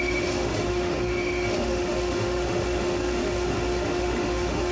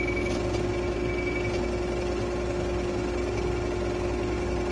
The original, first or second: second